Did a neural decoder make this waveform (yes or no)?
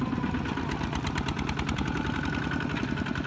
no